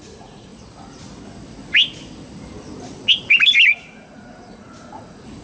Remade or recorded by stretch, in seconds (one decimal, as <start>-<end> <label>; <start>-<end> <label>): 0.0-0.5 remade; 0.5-3.7 recorded; 3.7-5.4 remade